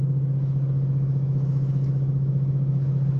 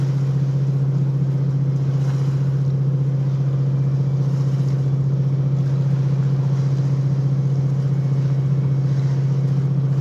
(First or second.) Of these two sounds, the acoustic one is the second